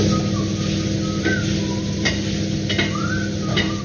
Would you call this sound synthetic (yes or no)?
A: no